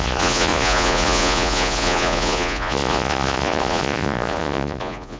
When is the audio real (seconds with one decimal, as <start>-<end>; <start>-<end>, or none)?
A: none